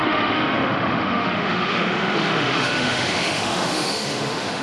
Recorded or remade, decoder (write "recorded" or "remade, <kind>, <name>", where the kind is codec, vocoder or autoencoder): remade, autoencoder, DAC-VAE